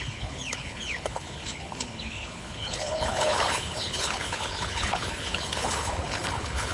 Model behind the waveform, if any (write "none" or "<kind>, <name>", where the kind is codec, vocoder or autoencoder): codec, HILCodec